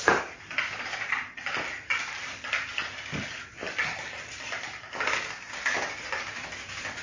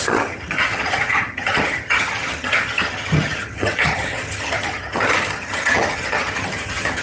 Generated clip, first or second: second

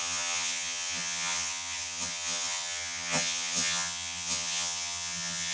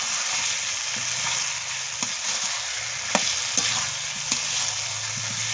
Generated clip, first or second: first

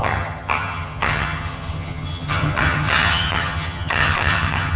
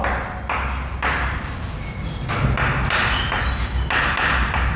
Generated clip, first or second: first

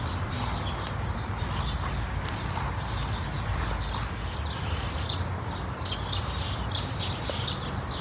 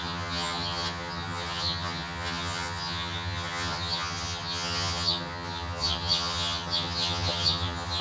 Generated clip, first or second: second